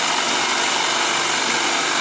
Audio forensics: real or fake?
real